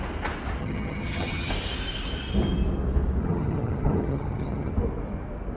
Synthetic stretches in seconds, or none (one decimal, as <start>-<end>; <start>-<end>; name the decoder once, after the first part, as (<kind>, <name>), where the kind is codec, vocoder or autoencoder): 0.6-1.5 (vocoder, HiFi-GAN); 3.2-4.7